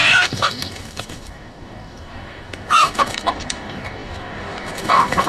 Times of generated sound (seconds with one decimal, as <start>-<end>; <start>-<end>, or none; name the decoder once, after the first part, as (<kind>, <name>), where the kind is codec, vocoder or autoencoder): 0.0-5.3 (codec, DAC)